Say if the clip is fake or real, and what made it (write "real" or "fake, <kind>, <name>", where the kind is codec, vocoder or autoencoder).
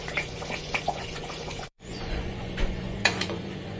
fake, vocoder, Vocos